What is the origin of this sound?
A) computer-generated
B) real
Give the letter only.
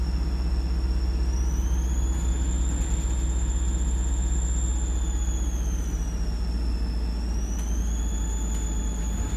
B